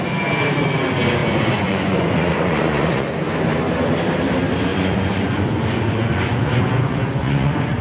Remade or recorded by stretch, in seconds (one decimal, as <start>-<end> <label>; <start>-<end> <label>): 0.0-1.2 recorded; 1.2-3.1 remade; 3.1-4.7 recorded; 4.7-7.8 remade

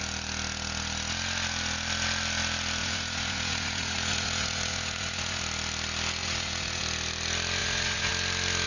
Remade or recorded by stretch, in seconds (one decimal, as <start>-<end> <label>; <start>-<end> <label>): 0.0-2.8 recorded; 2.8-5.4 remade; 5.4-6.2 recorded; 6.2-6.8 remade; 6.8-7.6 recorded; 7.6-8.1 remade; 8.1-8.7 recorded

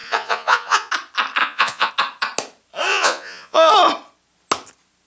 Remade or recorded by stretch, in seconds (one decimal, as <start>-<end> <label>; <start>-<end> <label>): 0.0-0.9 remade; 0.9-1.4 recorded; 1.4-1.9 remade; 1.9-2.9 recorded; 2.9-3.7 remade; 3.7-5.1 recorded

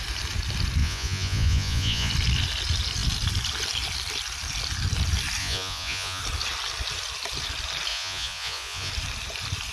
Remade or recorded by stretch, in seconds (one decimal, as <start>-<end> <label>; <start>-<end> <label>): 0.0-0.8 recorded; 0.8-2.1 remade; 2.1-5.4 recorded; 5.4-6.2 remade; 6.2-7.9 recorded; 7.9-8.9 remade; 8.9-9.7 recorded